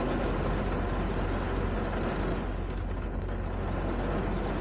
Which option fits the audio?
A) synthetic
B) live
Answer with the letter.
B